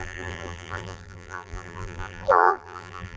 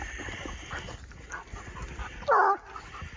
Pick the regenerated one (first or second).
first